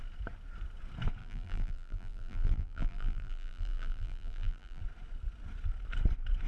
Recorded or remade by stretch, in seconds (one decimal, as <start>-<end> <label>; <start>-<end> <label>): 0.0-1.2 recorded; 1.2-4.8 remade; 4.8-6.5 recorded